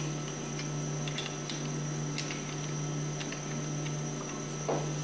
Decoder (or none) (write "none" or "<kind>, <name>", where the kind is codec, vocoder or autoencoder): none